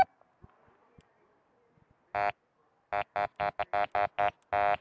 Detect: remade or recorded recorded